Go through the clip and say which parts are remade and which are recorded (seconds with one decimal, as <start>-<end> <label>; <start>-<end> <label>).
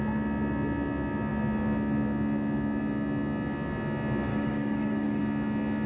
0.0-4.3 recorded; 4.3-5.2 remade; 5.2-5.9 recorded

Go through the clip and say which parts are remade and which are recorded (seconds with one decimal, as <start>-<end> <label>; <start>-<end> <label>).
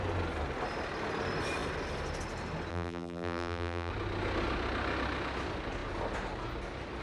0.0-2.7 recorded; 2.7-3.9 remade; 3.9-7.0 recorded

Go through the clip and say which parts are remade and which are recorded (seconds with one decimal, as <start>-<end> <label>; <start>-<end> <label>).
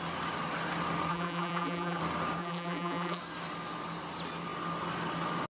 0.0-1.1 recorded; 1.1-2.0 remade; 2.0-2.4 recorded; 2.4-3.2 remade; 3.2-5.5 recorded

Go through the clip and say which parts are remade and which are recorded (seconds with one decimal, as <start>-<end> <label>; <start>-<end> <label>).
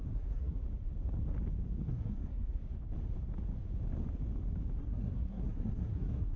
0.0-0.6 remade; 0.6-1.9 recorded; 1.9-2.6 remade; 2.6-4.8 recorded; 4.8-6.4 remade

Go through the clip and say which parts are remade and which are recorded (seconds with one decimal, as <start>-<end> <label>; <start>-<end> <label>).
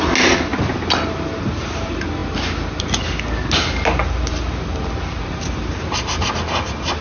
0.0-7.0 recorded